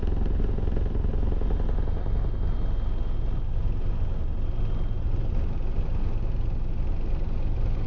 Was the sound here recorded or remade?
recorded